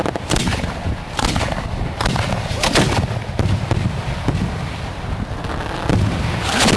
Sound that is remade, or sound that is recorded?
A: recorded